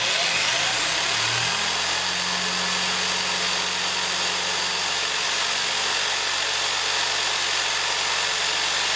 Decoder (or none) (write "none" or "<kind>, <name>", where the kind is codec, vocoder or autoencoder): none